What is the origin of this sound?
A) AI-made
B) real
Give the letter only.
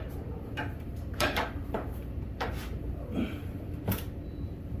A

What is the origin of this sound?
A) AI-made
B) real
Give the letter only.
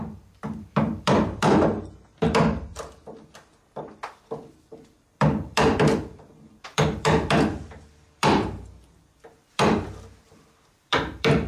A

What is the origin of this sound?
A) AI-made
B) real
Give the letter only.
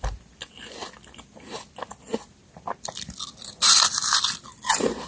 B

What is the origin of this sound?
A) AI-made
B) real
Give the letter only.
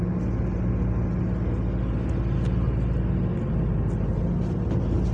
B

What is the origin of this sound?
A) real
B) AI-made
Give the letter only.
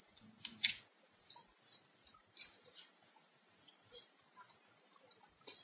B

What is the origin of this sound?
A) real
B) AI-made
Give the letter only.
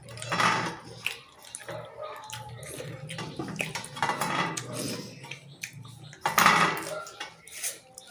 A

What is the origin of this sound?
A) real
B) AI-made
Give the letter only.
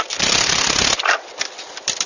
B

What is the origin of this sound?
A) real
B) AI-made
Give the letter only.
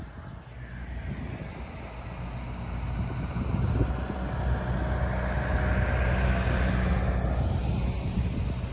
A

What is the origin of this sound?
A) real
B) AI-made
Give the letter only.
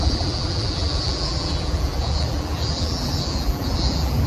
B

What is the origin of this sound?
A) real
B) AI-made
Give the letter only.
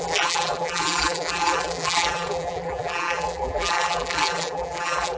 B